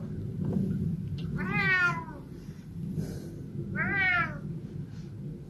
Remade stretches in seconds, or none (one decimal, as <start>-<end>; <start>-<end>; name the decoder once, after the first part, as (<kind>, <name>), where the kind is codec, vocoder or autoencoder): none